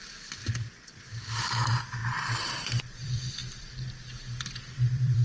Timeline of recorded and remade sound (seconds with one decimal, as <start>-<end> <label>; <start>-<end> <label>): 0.0-2.0 remade; 2.0-2.8 recorded; 2.8-3.4 remade; 3.4-4.6 recorded; 4.6-5.2 remade